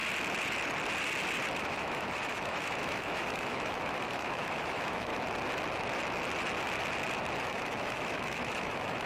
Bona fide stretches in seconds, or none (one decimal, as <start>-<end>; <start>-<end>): 0.0-1.6; 5.1-7.4